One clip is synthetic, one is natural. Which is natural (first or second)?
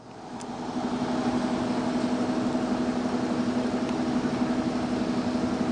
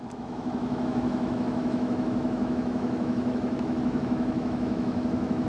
first